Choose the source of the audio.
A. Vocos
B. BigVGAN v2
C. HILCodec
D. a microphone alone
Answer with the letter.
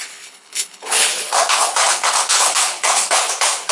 C